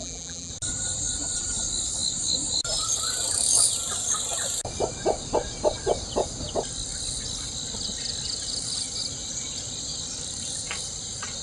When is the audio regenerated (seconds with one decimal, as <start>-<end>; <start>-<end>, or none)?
0.0-0.5